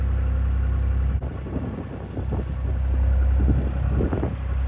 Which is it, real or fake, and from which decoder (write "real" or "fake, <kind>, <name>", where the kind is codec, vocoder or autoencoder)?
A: real